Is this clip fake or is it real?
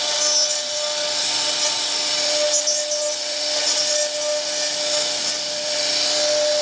real